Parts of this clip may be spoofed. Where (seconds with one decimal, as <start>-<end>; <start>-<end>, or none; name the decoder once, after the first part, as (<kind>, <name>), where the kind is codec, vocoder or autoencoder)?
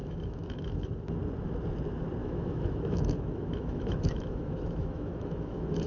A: 0.0-0.9 (autoencoder, DAC-VAE); 2.2-5.9